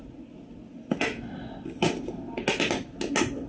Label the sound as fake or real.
real